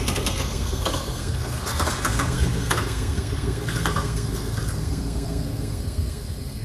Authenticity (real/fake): fake